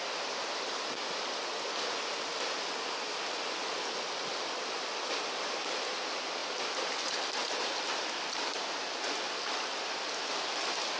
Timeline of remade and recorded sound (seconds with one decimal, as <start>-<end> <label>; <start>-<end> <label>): 0.0-11.0 recorded